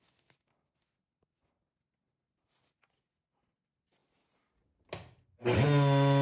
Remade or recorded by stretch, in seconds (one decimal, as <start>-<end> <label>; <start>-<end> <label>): 0.0-6.2 recorded